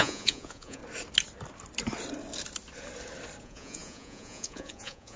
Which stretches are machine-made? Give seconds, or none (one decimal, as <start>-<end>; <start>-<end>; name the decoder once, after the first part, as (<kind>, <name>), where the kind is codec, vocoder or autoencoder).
0.0-0.8 (vocoder, Vocos); 3.4-5.2